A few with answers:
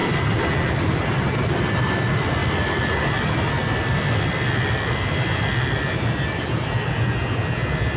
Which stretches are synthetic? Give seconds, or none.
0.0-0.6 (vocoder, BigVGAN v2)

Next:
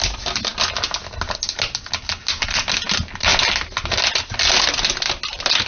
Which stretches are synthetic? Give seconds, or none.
none

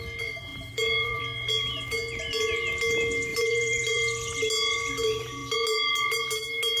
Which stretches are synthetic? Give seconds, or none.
0.5-1.2 (vocoder, BigVGAN v2); 3.3-4.0

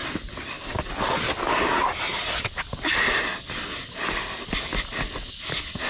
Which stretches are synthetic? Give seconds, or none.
none

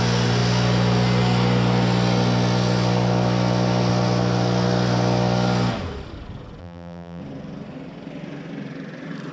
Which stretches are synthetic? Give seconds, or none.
6.6-7.2 (vocoder, BigVGAN v2)

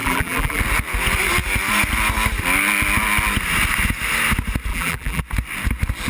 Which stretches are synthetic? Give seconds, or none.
0.0-0.6 (vocoder, BigVGAN v2); 4.7-5.2